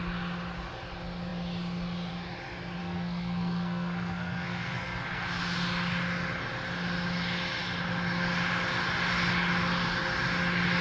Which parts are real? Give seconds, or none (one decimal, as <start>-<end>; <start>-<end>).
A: 0.0-2.8; 5.4-10.8